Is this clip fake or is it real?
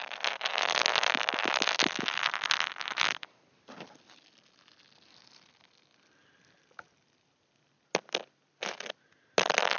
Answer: real